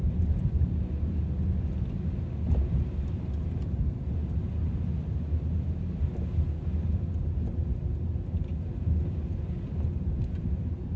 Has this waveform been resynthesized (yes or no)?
no